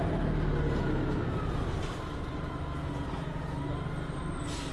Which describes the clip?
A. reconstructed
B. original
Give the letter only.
B